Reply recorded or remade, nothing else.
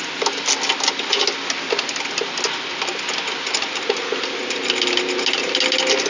recorded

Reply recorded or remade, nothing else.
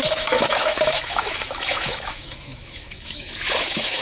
remade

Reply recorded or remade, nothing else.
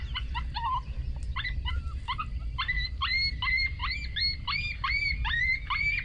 recorded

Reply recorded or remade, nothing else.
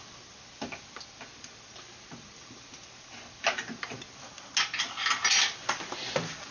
recorded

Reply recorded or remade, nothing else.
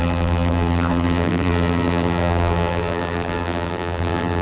remade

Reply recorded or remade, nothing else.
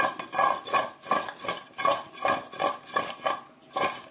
recorded